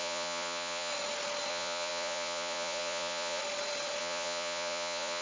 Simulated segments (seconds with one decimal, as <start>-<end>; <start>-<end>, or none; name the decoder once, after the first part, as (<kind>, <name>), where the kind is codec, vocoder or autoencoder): 0.0-0.9 (vocoder, Vocos); 1.5-3.4; 4.0-5.2